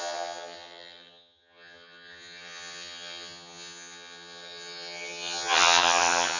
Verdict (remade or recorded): remade